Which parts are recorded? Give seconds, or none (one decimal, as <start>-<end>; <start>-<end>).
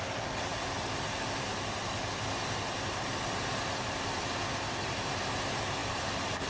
0.0-6.5